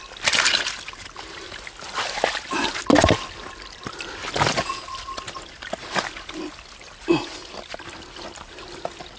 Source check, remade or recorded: recorded